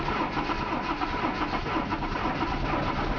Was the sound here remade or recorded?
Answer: recorded